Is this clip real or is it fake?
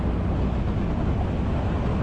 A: real